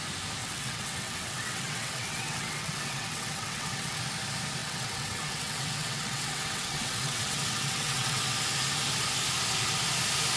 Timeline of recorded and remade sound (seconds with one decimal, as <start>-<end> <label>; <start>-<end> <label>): 0.0-0.4 recorded; 0.4-4.0 remade; 4.0-4.6 recorded; 4.6-8.2 remade; 8.2-10.4 recorded